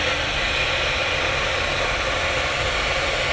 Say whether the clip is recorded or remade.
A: recorded